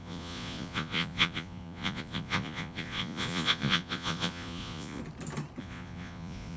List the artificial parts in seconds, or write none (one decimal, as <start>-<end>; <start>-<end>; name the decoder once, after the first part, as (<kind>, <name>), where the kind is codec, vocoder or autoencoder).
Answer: 0.0-5.0 (vocoder, Vocos); 5.6-6.6